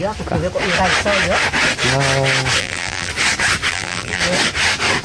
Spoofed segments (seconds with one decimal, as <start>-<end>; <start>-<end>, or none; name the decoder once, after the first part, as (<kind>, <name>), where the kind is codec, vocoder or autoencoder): 2.6-3.1 (vocoder, BigVGAN v2); 3.7-4.2